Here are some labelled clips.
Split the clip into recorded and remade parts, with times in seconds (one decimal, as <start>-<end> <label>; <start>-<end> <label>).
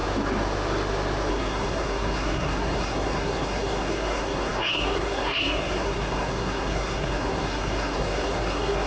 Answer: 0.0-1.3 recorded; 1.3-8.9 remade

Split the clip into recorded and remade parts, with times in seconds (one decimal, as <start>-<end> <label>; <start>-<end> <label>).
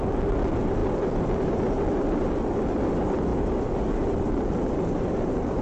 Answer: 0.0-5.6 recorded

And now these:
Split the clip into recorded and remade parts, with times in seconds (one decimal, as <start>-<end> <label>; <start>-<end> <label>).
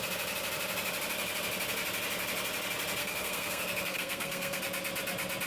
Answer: 0.0-3.0 recorded; 3.0-4.6 remade; 4.6-5.5 recorded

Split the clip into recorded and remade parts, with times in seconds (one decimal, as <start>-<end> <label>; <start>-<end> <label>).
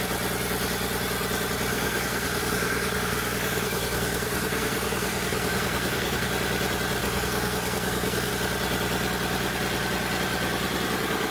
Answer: 0.0-1.7 recorded; 1.7-6.3 remade; 6.3-7.0 recorded; 7.0-8.3 remade; 8.3-11.3 recorded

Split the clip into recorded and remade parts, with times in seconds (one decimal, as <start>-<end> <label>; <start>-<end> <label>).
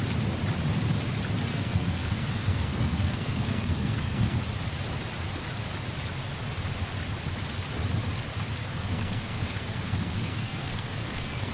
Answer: 0.0-1.5 recorded; 1.5-4.4 remade; 4.4-8.6 recorded; 8.6-11.5 remade